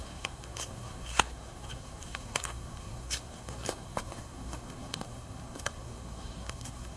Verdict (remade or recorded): remade